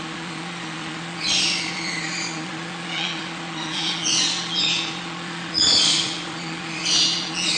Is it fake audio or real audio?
fake